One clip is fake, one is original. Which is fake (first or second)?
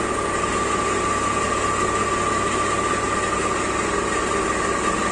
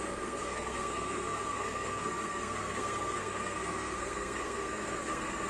second